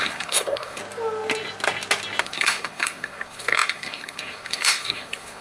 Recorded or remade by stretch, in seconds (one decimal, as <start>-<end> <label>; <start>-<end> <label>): 0.0-0.8 remade; 0.8-2.2 recorded; 2.2-5.4 remade